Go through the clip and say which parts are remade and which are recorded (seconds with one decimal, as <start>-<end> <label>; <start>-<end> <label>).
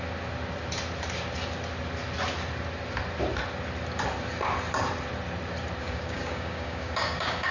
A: 0.0-5.8 recorded; 5.8-7.5 remade